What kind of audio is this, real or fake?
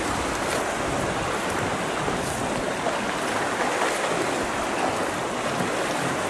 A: real